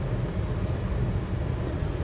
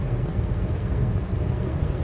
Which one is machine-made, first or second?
second